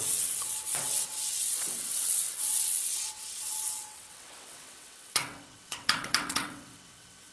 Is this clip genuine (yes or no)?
no